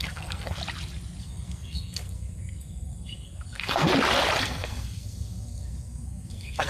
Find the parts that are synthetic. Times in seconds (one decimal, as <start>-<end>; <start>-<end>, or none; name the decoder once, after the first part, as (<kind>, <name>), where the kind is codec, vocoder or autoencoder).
0.0-0.6 (codec, SNAC); 1.2-3.9; 4.4-6.7